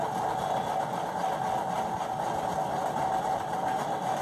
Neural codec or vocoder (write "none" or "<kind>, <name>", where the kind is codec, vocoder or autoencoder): none